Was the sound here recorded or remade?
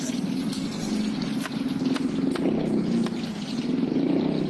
recorded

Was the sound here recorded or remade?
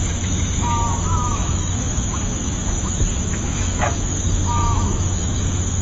remade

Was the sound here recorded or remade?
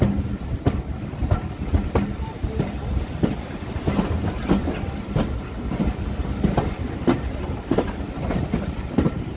recorded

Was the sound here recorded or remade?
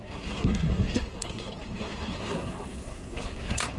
remade